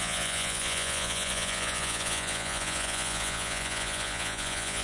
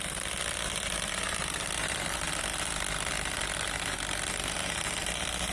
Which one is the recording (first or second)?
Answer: second